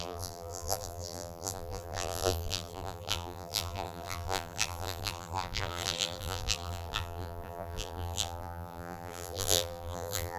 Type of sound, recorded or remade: remade